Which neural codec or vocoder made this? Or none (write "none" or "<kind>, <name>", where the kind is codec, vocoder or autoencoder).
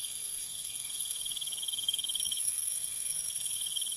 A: codec, SNAC